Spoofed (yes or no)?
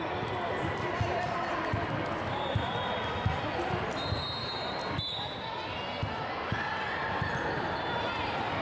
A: no